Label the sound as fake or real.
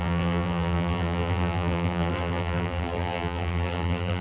fake